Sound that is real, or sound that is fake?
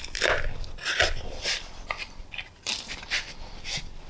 fake